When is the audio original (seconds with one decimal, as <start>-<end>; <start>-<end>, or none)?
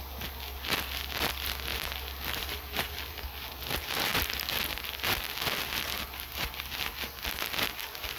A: 0.0-1.7; 3.2-8.2